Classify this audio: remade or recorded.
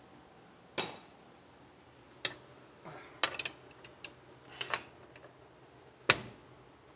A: recorded